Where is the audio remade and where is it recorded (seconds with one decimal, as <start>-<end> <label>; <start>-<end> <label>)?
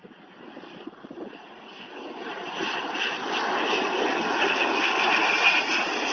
0.0-6.1 recorded